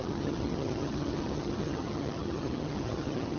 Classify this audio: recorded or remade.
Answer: remade